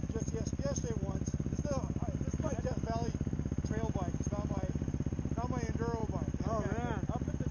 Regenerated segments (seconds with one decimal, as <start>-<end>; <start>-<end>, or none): none